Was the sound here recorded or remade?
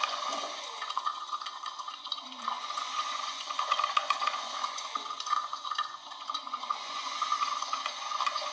remade